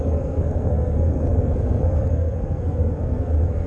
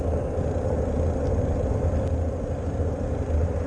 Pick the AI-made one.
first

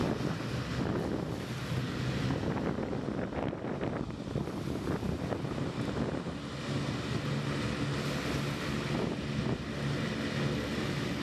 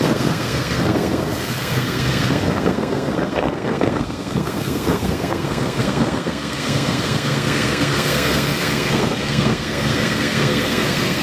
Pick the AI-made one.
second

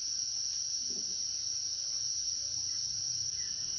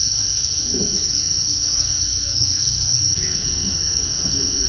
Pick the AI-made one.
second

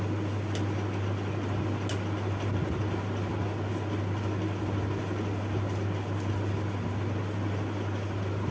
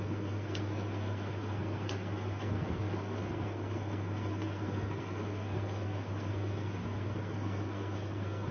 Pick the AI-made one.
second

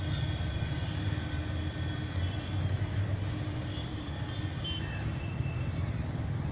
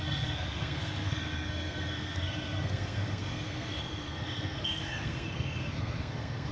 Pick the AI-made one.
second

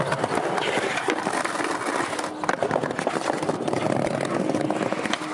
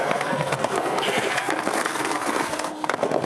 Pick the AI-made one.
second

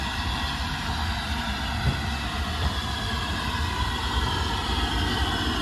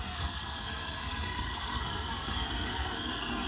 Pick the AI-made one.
second